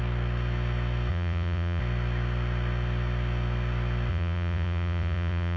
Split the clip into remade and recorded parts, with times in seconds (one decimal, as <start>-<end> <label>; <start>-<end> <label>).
0.0-1.1 recorded; 1.1-1.8 remade; 1.8-4.1 recorded; 4.1-5.6 remade